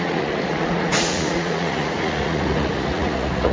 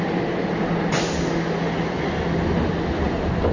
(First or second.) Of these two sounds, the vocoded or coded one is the first